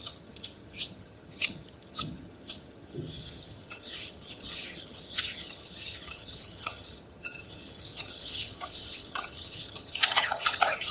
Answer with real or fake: fake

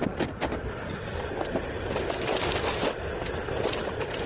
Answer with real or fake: real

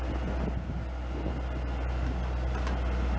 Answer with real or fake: real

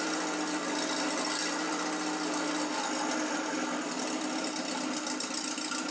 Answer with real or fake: real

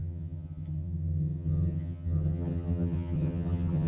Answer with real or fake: fake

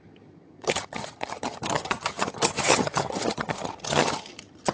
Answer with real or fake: fake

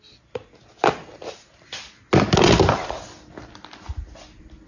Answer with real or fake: real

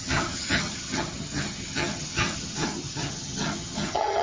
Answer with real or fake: fake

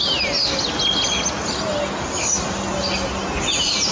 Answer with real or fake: real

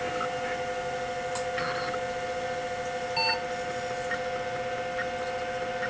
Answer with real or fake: real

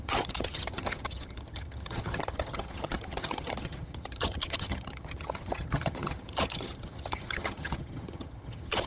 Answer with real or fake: fake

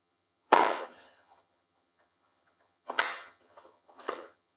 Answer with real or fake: fake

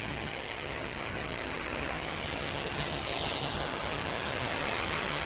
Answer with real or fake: fake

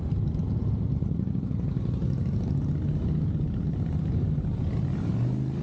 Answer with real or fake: real